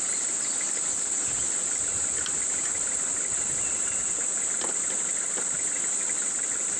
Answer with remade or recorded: recorded